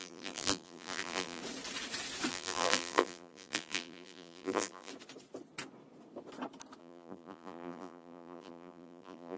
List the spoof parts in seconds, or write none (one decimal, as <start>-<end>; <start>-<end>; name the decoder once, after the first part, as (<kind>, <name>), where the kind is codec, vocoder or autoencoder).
0.0-1.4 (vocoder, BigVGAN v2); 2.3-4.9; 6.8-9.4